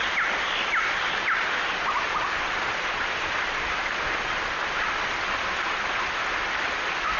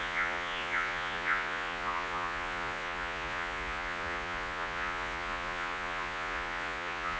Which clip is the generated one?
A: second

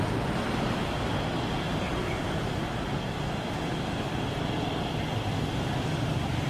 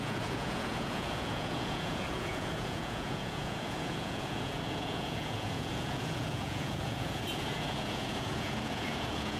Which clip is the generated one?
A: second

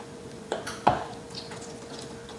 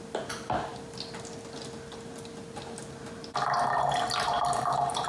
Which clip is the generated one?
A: first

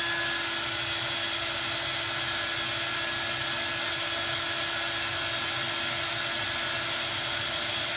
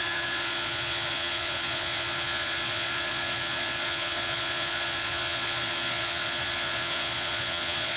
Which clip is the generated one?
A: second